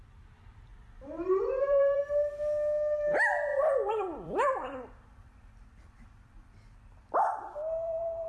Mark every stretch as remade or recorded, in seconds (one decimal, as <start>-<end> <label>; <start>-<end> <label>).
0.0-0.7 recorded; 0.7-2.0 remade; 2.0-3.5 recorded; 3.5-7.4 remade; 7.4-8.3 recorded